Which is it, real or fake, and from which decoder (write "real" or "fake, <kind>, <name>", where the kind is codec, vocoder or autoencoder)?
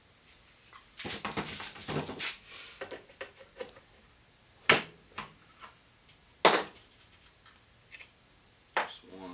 real